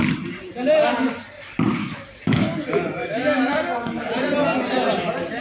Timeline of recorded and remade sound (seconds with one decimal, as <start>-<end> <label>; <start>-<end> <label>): 0.0-1.8 recorded; 1.8-2.6 remade; 2.6-3.0 recorded; 3.0-4.0 remade; 4.0-5.4 recorded